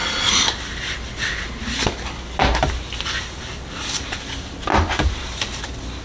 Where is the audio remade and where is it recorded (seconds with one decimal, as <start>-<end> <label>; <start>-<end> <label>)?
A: 0.0-1.4 remade; 1.4-6.0 recorded